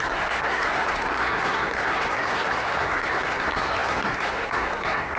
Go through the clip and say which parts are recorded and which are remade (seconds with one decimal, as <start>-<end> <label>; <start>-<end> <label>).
0.0-5.2 remade